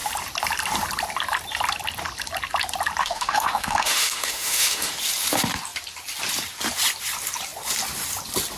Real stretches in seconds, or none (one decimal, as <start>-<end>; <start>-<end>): 0.0-3.0; 4.9-8.6